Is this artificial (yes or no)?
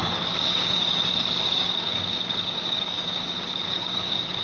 yes